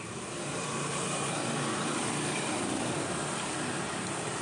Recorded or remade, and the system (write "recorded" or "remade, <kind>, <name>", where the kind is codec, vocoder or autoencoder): recorded